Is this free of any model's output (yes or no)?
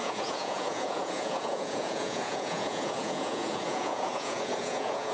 no